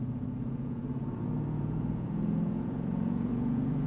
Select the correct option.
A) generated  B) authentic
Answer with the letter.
A